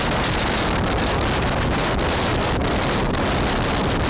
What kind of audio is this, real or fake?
real